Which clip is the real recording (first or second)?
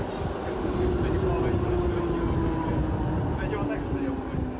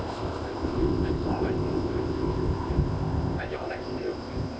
first